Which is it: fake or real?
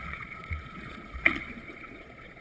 fake